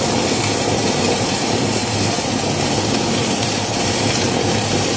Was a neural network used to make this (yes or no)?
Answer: yes